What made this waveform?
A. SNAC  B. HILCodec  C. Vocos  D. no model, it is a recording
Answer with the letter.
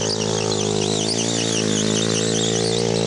D